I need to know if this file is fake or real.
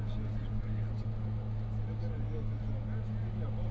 real